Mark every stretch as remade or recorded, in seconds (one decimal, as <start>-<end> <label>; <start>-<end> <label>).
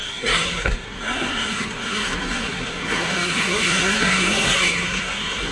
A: 0.0-5.5 remade